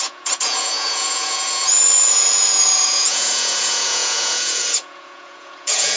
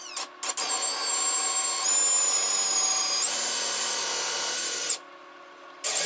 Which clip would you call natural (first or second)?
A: second